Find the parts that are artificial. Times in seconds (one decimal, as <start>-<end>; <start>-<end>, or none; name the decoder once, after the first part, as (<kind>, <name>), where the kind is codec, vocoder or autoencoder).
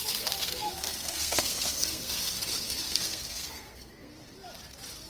0.0-4.1 (codec, SNAC)